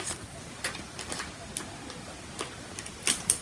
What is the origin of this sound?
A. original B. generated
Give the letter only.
A